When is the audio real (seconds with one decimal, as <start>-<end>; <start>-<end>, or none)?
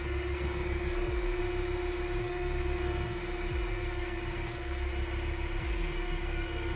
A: 1.4-2.2; 3.2-3.7; 4.9-5.6